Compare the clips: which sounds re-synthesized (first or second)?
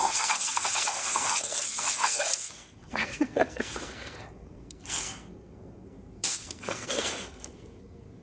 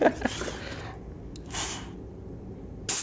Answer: first